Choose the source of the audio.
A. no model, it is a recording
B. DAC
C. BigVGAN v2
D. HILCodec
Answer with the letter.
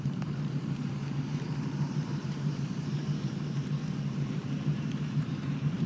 C